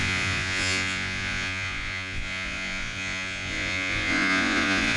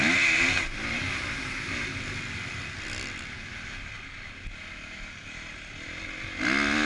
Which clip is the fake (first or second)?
first